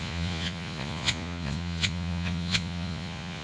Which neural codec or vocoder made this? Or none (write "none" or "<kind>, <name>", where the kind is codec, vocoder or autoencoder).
vocoder, Vocos